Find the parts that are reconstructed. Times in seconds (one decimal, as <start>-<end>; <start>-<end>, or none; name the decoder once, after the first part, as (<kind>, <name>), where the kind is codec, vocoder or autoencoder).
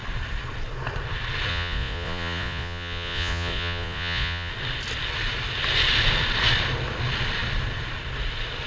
1.5-4.5 (vocoder, Vocos)